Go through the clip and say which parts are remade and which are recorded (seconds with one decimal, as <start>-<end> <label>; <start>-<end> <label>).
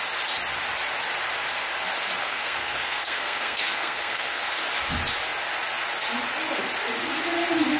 0.0-2.2 recorded; 2.2-4.5 remade; 4.5-7.8 recorded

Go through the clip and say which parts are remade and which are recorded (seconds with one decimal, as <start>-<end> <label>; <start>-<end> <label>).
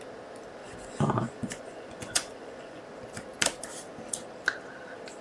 0.0-0.6 recorded; 0.6-2.8 remade; 2.8-5.2 recorded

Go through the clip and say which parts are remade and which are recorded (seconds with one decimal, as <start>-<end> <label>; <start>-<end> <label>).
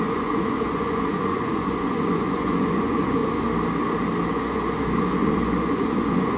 0.0-3.2 remade; 3.2-4.3 recorded; 4.3-6.4 remade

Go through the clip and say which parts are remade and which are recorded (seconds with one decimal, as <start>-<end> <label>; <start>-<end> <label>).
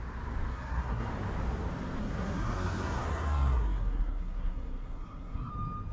0.0-0.5 recorded; 0.5-1.1 remade; 1.1-2.0 recorded; 2.0-5.5 remade; 5.5-5.9 recorded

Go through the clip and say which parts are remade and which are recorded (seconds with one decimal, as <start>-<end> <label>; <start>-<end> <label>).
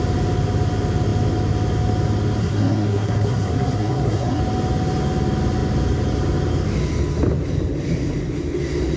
0.0-2.4 recorded; 2.4-4.4 remade; 4.4-9.0 recorded